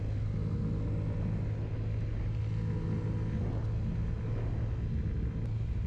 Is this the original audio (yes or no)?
yes